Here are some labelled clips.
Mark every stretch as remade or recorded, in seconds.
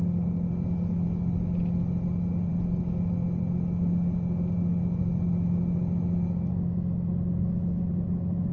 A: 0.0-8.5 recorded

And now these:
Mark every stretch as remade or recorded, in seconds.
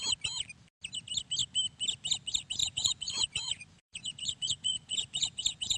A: 0.0-2.6 recorded; 2.6-5.8 remade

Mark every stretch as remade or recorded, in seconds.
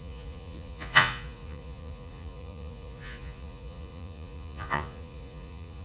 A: 0.0-5.8 remade